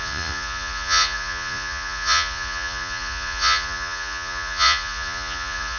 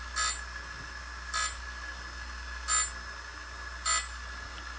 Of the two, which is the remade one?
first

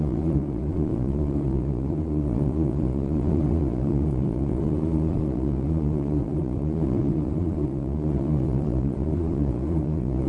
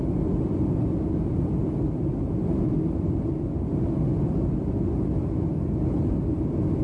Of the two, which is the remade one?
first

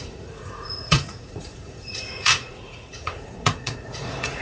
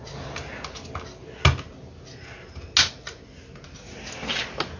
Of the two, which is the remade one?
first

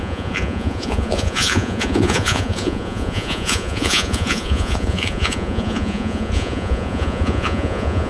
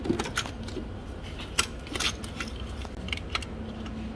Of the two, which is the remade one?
first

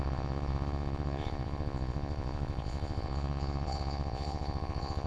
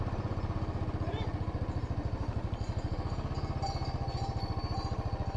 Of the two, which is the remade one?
first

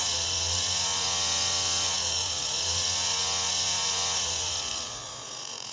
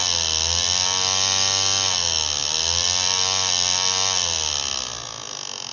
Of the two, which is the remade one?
first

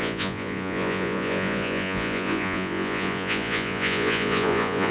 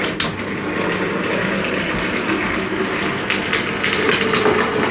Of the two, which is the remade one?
first